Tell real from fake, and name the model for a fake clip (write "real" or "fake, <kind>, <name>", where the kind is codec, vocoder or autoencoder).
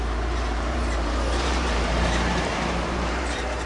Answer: fake, vocoder, BigVGAN v2